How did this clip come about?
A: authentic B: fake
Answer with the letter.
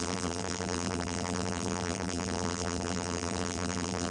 B